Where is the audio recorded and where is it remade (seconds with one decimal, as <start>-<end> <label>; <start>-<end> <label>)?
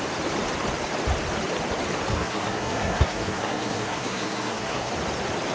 0.0-2.1 recorded; 2.1-4.9 remade; 4.9-5.5 recorded